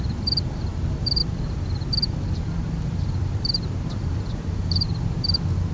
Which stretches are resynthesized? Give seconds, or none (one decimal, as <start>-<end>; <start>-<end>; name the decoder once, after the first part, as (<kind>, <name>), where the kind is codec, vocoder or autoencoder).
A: 0.0-5.7 (vocoder, BigVGAN v2)